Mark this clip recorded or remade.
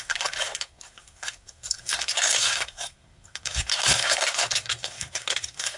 remade